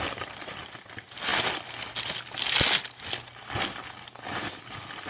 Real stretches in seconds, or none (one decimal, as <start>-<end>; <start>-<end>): 0.0-5.1